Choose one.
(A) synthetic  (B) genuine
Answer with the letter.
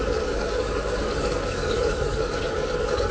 A